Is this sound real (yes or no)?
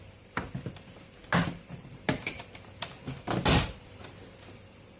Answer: yes